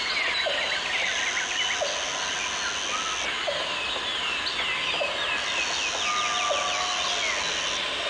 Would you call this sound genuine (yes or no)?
yes